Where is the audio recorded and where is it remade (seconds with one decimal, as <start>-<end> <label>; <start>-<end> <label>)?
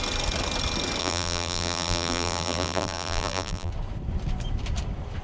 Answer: 0.0-1.0 recorded; 1.0-3.7 remade; 3.7-5.2 recorded